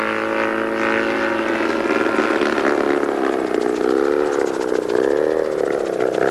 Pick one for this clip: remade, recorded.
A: recorded